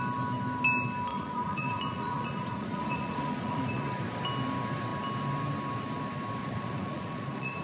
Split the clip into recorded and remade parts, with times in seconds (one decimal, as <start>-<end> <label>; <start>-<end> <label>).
0.0-1.1 recorded; 1.1-3.9 remade; 3.9-6.4 recorded; 6.4-7.6 remade

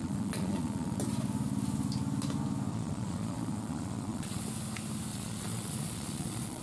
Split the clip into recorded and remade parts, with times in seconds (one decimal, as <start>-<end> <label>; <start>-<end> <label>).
0.0-1.0 remade; 1.0-2.7 recorded; 2.7-4.4 remade; 4.4-5.1 recorded; 5.1-6.6 remade

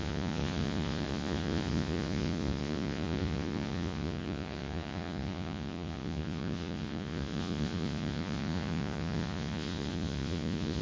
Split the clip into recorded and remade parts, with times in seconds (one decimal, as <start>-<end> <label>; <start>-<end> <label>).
0.0-10.8 remade

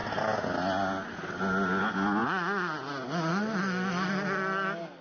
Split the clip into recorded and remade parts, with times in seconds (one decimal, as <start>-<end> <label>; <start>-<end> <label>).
0.0-5.0 recorded

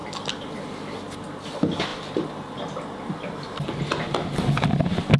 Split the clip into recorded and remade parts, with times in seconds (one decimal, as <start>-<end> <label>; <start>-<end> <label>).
0.0-5.2 recorded